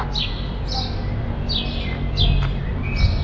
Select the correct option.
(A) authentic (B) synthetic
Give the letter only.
A